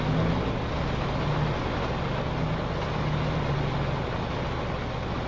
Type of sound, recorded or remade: recorded